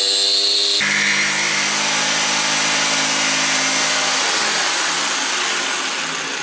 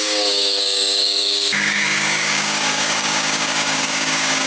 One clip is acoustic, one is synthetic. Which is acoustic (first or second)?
first